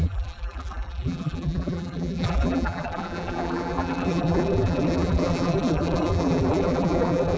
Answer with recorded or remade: remade